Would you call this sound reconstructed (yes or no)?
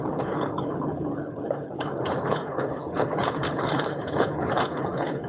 yes